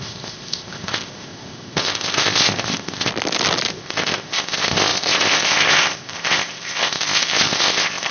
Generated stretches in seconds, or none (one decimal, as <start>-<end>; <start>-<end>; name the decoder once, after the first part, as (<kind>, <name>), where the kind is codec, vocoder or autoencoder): 0.0-3.1 (codec, ZipCodec); 3.7-8.1